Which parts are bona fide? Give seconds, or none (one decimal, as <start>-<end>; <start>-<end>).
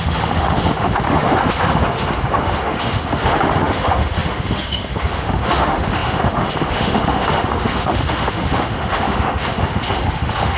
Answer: none